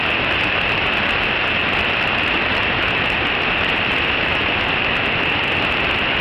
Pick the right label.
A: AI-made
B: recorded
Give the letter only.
B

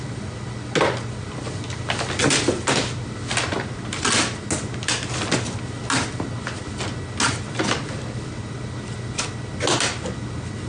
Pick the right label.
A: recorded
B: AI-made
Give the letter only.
A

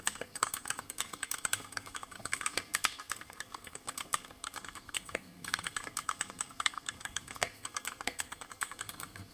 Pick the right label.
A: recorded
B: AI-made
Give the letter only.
B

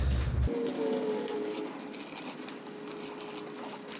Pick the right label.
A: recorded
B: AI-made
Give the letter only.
A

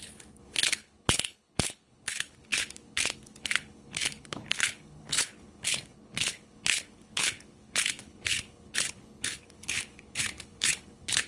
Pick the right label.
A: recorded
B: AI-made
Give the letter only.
B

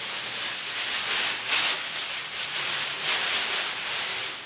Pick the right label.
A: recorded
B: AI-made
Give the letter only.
A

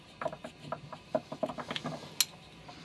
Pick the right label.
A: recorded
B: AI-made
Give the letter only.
A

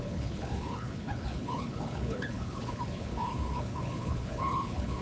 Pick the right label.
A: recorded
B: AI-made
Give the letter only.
B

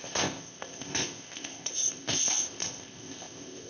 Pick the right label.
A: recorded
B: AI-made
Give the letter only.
B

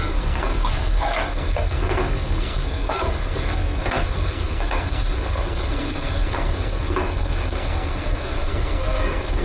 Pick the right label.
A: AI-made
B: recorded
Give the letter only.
A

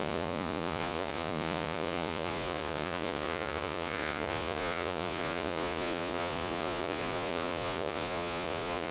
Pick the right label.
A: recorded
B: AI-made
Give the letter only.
B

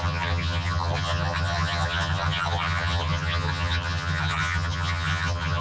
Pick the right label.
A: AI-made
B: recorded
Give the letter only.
A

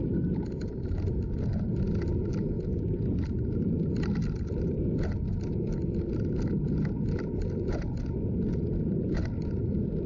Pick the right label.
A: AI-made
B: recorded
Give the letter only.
B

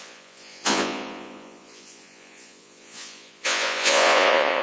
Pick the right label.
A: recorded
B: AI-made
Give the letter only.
B